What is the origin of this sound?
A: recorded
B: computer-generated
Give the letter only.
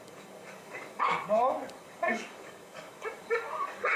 B